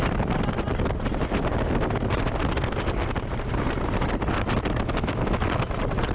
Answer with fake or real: real